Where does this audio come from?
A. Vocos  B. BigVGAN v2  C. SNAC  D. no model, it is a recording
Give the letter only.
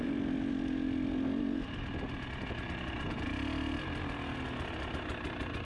D